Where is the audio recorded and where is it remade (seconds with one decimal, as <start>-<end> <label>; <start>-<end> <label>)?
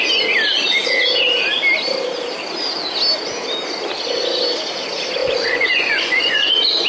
0.0-5.2 recorded; 5.2-6.5 remade; 6.5-6.9 recorded